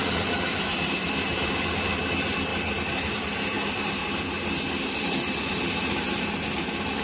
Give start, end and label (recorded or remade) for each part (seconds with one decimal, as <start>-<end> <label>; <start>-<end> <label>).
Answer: 0.0-7.0 remade